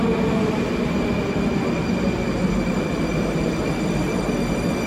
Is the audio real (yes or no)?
yes